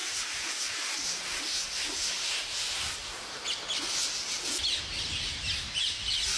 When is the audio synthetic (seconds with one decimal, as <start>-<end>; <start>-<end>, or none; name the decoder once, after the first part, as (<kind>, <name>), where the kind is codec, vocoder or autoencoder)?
none

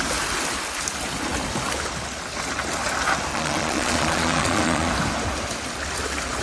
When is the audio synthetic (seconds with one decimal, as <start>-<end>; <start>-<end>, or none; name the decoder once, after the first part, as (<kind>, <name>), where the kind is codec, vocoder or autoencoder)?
3.3-4.9 (vocoder, Vocos)

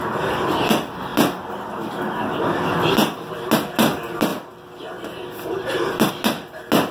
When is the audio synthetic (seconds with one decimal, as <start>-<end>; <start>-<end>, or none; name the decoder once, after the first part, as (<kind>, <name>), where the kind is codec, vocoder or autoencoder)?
none

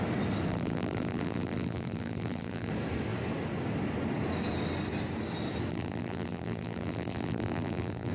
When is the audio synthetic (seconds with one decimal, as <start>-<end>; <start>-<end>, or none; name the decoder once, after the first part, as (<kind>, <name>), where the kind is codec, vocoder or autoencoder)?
0.5-2.7 (vocoder, BigVGAN v2); 5.7-8.1

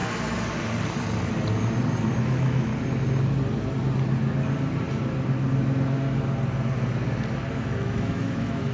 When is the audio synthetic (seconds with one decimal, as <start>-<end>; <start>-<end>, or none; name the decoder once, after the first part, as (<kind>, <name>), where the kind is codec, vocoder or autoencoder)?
2.2-2.7 (autoencoder, DAC-VAE); 7.5-8.7

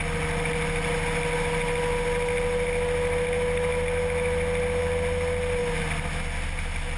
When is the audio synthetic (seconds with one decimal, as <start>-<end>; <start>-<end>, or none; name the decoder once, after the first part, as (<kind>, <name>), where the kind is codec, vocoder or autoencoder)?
none